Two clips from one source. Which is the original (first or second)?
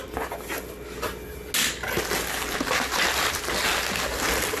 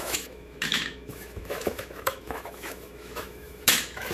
first